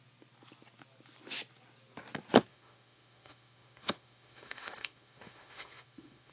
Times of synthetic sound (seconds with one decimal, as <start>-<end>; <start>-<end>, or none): 2.5-6.3